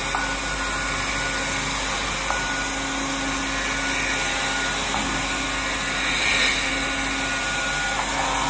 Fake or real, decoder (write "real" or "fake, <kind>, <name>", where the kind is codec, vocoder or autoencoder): real